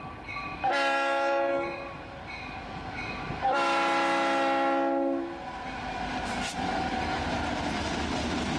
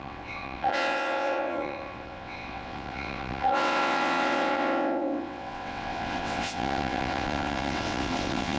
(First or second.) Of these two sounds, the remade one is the second